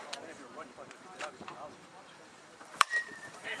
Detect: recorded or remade remade